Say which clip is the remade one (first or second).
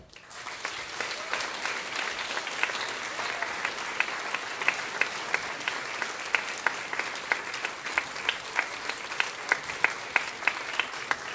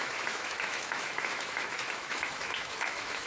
second